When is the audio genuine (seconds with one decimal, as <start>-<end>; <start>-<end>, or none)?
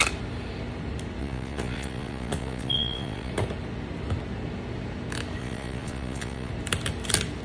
0.0-1.2; 3.3-5.4; 6.5-7.4